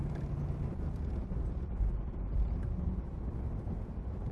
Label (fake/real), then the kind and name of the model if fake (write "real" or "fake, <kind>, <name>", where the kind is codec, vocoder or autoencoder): fake, vocoder, BigVGAN v2